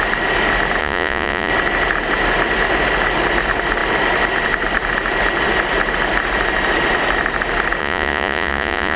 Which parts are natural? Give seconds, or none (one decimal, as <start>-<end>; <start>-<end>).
0.0-0.8; 1.5-7.8